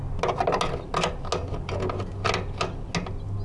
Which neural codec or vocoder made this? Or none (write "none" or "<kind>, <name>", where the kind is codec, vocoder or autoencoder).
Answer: none